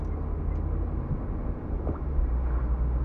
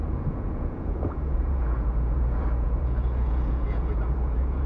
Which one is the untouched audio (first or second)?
first